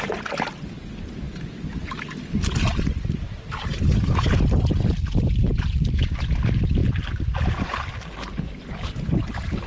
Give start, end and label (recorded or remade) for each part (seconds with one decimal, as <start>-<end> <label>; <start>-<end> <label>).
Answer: 0.0-9.7 recorded